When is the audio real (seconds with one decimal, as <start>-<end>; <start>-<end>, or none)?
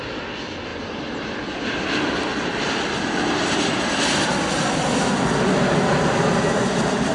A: 0.0-0.7; 3.9-4.3